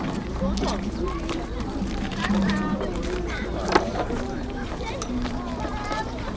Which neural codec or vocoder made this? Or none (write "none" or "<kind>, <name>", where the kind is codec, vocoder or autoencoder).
vocoder, BigVGAN v2